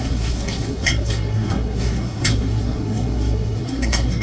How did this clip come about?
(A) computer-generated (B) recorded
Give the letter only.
A